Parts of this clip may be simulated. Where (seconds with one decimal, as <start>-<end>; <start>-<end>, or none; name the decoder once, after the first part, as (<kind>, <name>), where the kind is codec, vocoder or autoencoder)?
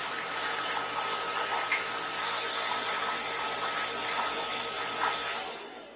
0.0-0.9 (vocoder, BigVGAN v2)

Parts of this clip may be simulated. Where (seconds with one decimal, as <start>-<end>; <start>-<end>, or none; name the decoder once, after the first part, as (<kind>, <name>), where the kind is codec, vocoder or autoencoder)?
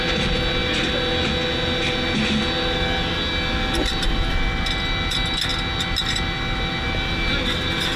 none